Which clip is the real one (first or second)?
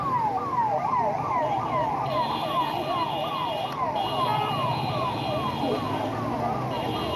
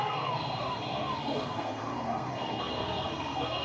first